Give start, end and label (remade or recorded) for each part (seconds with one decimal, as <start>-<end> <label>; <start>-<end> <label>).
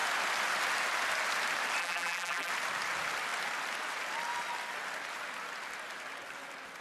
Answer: 0.0-1.8 recorded; 1.8-2.5 remade; 2.5-6.8 recorded